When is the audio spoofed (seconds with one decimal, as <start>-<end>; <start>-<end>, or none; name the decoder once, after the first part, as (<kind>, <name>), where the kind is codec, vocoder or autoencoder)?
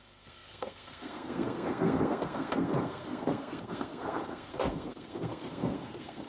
0.0-6.3 (codec, SNAC)